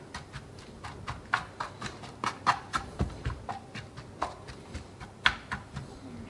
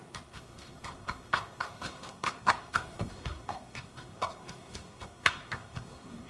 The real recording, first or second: first